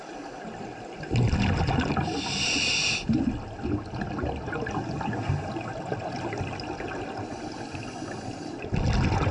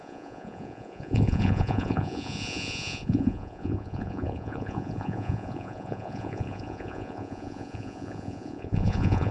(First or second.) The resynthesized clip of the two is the second